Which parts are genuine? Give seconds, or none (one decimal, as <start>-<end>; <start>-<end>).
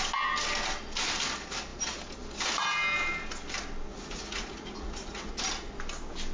0.0-3.9; 5.3-6.3